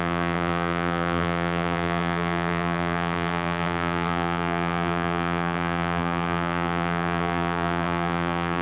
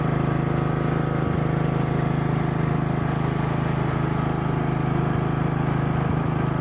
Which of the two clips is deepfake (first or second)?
first